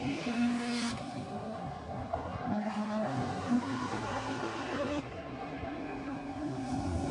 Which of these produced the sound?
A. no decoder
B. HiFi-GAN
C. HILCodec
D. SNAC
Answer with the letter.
D